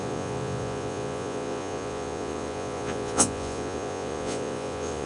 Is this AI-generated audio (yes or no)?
yes